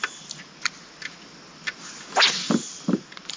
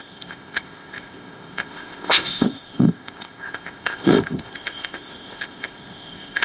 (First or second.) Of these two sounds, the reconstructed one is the second